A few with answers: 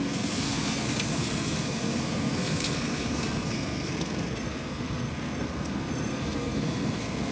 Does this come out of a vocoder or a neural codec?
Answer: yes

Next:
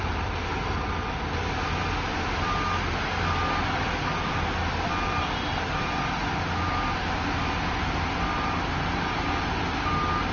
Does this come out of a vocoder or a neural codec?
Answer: no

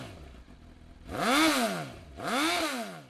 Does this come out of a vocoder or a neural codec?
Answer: no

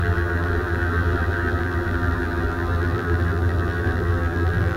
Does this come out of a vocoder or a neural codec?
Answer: yes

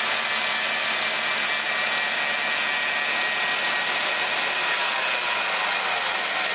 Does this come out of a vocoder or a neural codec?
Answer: no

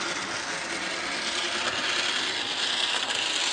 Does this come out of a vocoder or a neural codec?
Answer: no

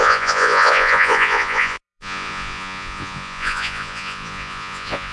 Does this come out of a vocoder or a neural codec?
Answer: yes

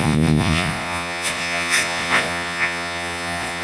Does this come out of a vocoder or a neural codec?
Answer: yes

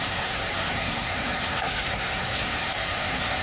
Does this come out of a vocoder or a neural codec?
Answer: yes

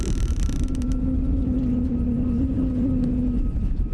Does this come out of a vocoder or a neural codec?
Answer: no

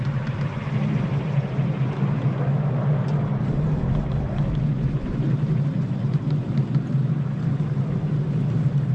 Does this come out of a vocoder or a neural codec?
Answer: no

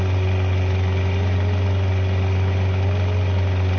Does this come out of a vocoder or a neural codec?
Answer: no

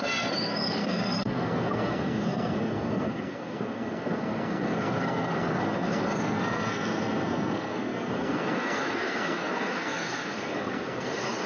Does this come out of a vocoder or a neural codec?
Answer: yes